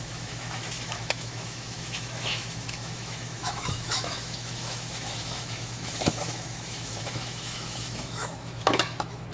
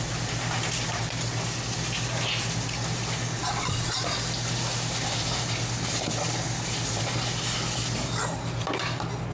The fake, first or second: first